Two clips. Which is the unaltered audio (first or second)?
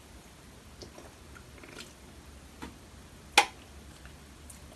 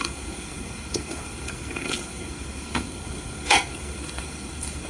first